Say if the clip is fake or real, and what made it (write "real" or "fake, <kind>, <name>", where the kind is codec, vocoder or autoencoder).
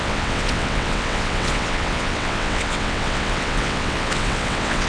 fake, vocoder, WaveNeXt